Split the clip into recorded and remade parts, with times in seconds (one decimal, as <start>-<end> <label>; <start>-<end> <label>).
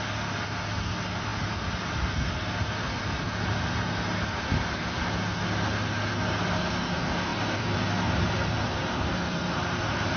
0.0-7.3 recorded; 7.3-10.2 remade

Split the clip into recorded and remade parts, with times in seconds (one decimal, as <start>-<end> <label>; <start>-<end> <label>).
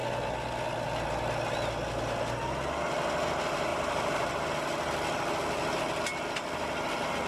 0.0-3.7 recorded; 3.7-4.3 remade; 4.3-7.3 recorded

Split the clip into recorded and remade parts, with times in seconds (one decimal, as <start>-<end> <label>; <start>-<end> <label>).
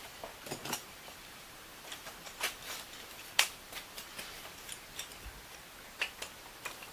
0.0-0.6 recorded; 0.6-4.7 remade; 4.7-6.9 recorded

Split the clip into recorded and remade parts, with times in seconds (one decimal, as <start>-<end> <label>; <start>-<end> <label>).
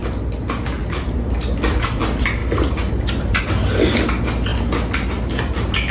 0.0-0.8 recorded; 0.8-1.3 remade; 1.3-2.4 recorded; 2.4-3.4 remade; 3.4-5.9 recorded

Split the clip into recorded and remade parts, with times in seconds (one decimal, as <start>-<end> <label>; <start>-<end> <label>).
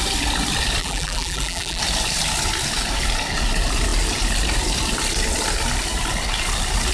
0.0-0.8 recorded; 0.8-1.8 remade; 1.8-6.9 recorded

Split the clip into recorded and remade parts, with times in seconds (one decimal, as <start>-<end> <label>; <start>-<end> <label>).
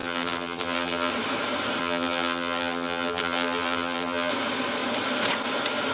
0.0-1.1 remade; 1.1-1.8 recorded; 1.8-4.3 remade; 4.3-5.9 recorded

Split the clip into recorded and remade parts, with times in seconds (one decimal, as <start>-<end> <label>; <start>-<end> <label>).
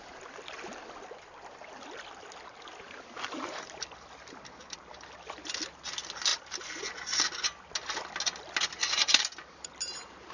0.0-10.3 recorded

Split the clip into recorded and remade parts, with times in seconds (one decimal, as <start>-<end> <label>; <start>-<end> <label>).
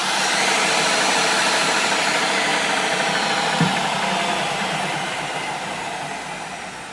0.0-2.5 recorded; 2.5-6.9 remade